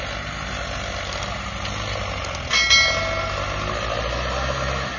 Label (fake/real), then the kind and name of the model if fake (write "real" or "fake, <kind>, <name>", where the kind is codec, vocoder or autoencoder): real